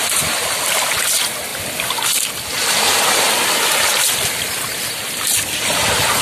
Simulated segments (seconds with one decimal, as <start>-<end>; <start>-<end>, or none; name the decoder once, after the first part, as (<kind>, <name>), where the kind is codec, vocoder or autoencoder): none